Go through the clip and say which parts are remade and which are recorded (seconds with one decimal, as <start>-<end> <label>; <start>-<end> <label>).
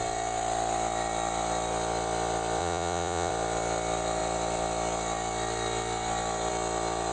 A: 0.0-2.6 recorded; 2.6-3.3 remade; 3.3-7.1 recorded